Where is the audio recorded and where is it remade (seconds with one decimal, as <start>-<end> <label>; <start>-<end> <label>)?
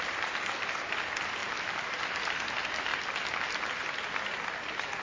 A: 0.0-5.0 recorded